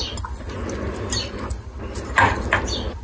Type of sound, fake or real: real